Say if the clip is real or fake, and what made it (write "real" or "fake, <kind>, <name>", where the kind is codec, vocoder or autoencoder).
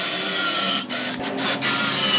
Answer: real